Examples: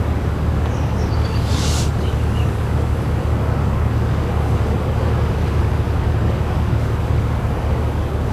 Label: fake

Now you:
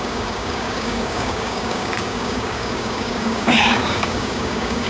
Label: fake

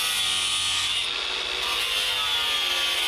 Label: real